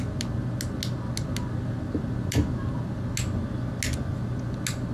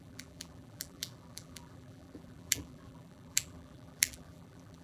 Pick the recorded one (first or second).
first